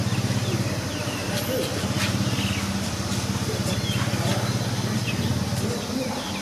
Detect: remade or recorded recorded